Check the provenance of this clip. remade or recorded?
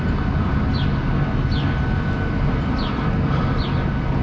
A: recorded